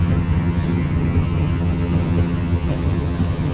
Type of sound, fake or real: fake